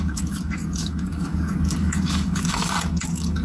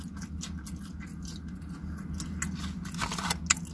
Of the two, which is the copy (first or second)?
first